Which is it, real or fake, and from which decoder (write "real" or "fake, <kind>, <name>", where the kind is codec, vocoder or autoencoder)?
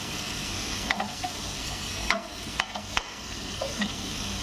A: fake, codec, SNAC